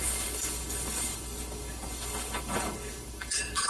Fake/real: fake